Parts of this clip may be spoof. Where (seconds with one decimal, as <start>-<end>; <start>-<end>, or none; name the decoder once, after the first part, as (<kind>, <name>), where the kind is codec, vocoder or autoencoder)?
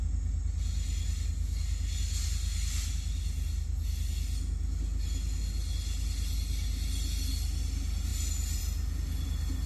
none